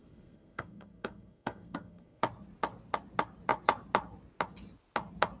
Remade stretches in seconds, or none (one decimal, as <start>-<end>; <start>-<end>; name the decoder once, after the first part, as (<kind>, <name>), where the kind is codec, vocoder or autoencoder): 0.0-2.2 (codec, SNAC)